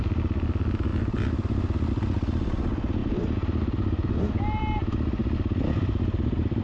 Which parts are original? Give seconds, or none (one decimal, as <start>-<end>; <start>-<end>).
0.0-6.6